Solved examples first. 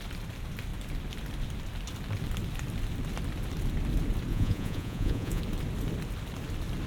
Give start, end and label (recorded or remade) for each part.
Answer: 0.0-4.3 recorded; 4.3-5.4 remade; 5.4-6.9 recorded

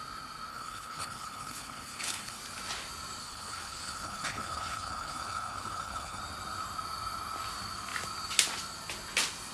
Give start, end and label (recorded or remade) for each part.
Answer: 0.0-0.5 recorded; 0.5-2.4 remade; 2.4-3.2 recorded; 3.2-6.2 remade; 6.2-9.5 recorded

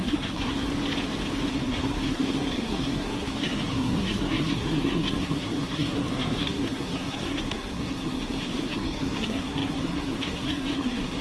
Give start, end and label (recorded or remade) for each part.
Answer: 0.0-0.7 remade; 0.7-1.5 recorded; 1.5-11.2 remade

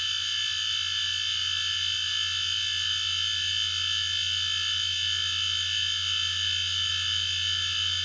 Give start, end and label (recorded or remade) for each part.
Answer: 0.0-8.0 recorded